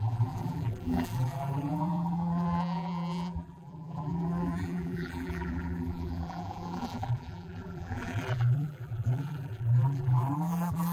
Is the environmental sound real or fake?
fake